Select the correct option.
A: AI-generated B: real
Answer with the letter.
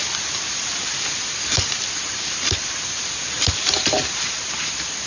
B